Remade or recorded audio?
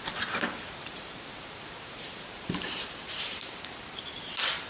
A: remade